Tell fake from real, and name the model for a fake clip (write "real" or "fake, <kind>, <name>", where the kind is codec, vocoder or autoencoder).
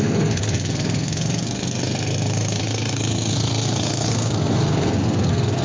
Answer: fake, codec, SNAC